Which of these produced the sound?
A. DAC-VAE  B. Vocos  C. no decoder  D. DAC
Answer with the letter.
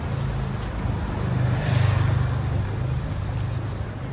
C